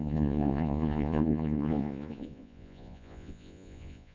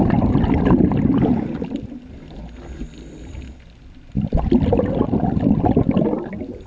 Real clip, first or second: second